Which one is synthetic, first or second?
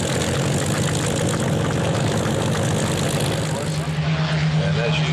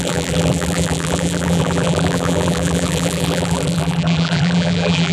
second